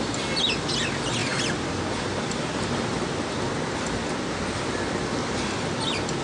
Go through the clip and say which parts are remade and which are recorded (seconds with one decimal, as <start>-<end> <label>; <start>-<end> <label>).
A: 0.0-6.2 recorded